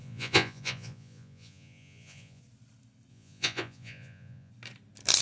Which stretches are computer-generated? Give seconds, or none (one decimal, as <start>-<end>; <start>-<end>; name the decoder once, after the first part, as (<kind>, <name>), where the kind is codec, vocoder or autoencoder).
0.0-2.4 (vocoder, Vocos); 3.1-4.5